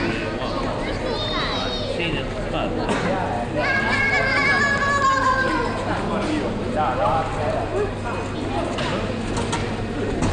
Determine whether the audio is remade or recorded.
recorded